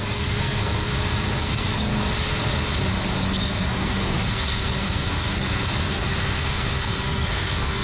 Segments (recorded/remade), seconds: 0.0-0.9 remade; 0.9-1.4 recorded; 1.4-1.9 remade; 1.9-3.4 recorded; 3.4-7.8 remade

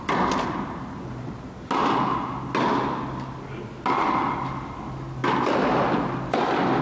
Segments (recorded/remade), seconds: 0.0-6.8 recorded

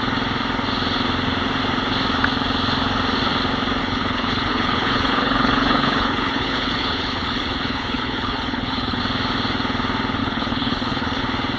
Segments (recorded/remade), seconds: 0.0-3.8 recorded; 3.8-9.0 remade; 9.0-10.2 recorded; 10.2-11.2 remade; 11.2-11.6 recorded

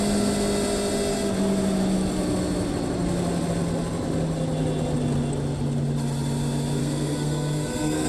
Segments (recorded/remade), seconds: 0.0-6.8 recorded; 6.8-8.1 remade

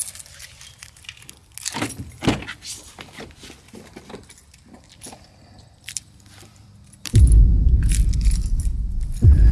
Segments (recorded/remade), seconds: 0.0-1.4 remade; 1.4-4.5 recorded; 4.5-9.5 remade